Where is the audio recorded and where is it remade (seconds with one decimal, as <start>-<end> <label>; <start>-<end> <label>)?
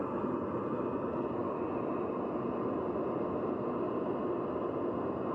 0.0-0.6 remade; 0.6-1.4 recorded; 1.4-4.6 remade; 4.6-5.3 recorded